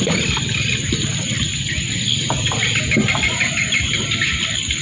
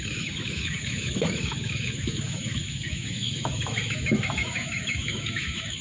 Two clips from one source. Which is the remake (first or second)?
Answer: second